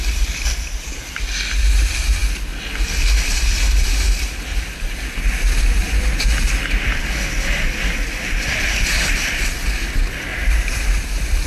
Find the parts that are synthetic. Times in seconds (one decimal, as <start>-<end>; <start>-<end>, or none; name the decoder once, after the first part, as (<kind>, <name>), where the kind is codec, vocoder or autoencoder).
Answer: none